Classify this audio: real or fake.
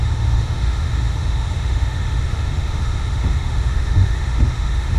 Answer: fake